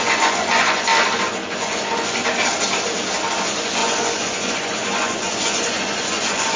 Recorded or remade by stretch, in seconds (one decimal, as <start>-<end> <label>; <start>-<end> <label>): 0.0-0.9 remade; 0.9-1.5 recorded; 1.5-2.2 remade; 2.2-3.4 recorded; 3.4-6.6 remade